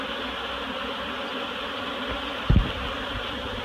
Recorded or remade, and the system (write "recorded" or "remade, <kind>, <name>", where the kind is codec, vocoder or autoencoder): recorded